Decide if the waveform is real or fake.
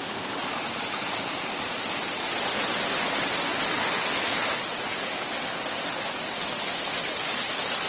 real